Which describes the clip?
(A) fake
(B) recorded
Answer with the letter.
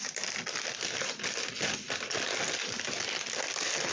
B